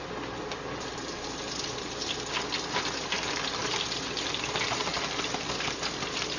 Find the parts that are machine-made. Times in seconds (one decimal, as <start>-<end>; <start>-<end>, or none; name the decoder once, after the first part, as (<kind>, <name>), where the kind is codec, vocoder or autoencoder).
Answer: 3.6-4.2 (vocoder, BigVGAN v2); 4.9-5.5